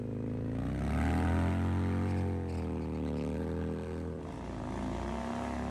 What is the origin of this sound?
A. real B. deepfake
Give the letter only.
A